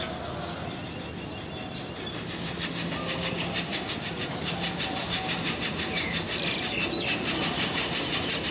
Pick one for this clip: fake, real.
real